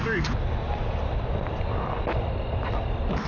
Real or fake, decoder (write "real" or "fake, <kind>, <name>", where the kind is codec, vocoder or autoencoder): real